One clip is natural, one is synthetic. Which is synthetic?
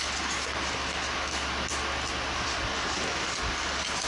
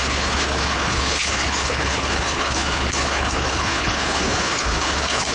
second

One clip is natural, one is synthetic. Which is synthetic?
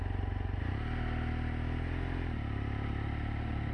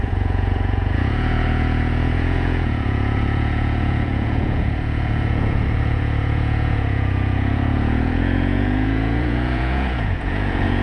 second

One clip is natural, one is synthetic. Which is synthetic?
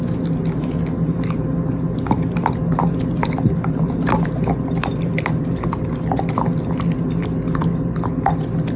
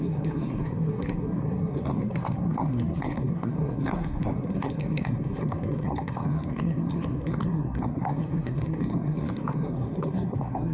second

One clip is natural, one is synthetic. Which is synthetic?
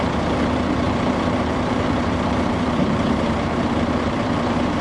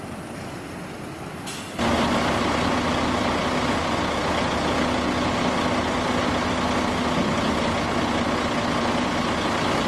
first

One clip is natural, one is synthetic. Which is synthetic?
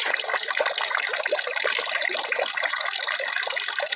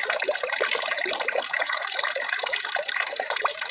second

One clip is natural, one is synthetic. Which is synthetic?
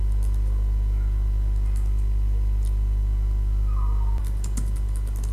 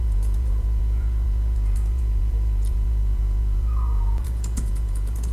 second